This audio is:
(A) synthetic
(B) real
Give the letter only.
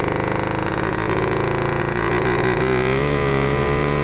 A